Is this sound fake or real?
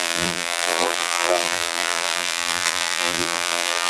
fake